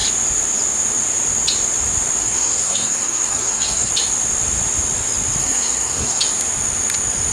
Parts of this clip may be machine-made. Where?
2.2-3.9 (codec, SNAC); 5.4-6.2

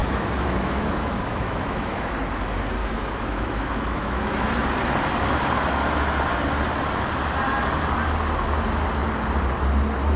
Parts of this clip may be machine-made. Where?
0.0-2.1 (autoencoder, DAC-VAE); 2.8-4.5

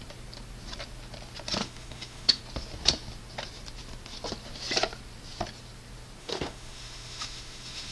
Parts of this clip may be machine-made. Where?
1.6-2.4 (autoencoder, DAC-VAE); 6.2-7.9

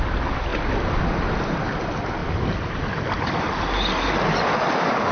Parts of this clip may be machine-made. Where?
none

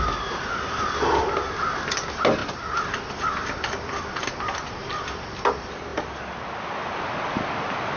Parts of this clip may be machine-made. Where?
none

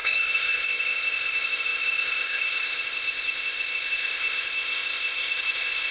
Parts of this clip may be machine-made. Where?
0.0-5.9 (codec, ZipCodec)

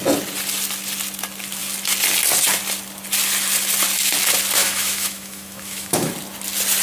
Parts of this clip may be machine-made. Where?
4.6-6.1 (autoencoder, DAC-VAE)

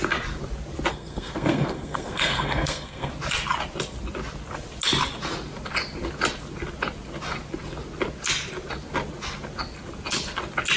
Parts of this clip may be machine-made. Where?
0.9-3.1 (codec, SNAC)